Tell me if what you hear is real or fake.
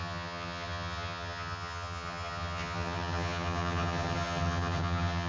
fake